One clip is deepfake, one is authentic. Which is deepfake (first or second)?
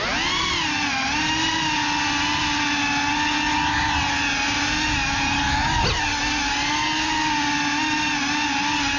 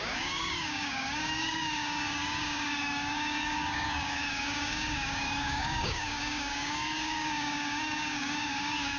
second